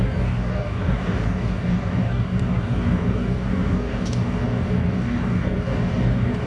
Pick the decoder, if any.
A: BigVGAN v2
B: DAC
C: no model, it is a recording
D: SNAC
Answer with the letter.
B